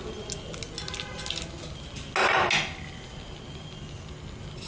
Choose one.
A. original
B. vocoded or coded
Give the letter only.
A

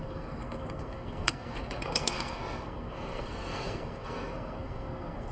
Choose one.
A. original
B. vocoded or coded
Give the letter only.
B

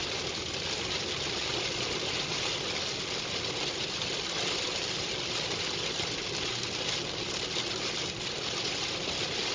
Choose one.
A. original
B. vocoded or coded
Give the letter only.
A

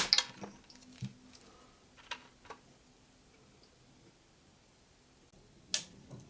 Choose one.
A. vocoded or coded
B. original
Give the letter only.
B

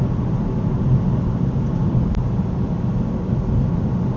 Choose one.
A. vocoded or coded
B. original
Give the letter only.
B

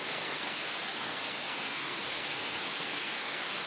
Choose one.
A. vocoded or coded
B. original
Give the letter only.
A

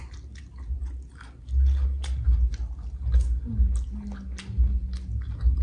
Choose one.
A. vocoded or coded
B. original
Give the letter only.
B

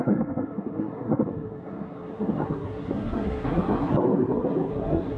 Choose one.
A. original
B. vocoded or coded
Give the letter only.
B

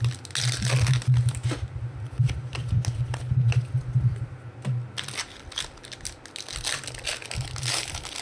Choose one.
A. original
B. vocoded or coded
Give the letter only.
A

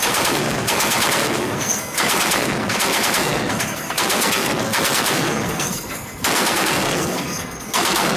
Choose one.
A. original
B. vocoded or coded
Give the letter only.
B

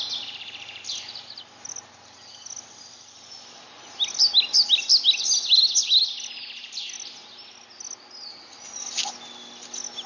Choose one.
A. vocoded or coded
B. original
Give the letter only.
B